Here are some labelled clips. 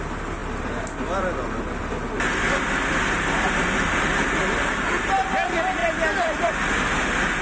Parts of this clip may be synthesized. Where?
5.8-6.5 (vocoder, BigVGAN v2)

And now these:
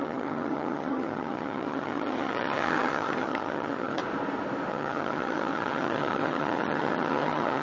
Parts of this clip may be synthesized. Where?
0.0-4.0 (vocoder, HiFi-GAN); 4.7-7.6

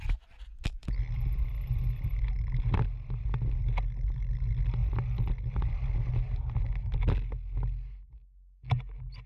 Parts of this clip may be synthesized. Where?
none

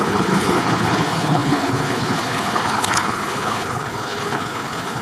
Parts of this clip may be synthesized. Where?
0.0-5.0 (codec, HILCodec)

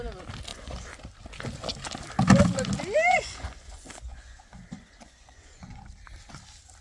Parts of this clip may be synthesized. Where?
0.5-1.0 (vocoder, Vocos); 3.1-5.9

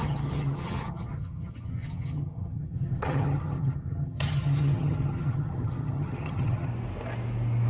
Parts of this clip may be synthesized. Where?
0.0-6.7 (vocoder, HiFi-GAN)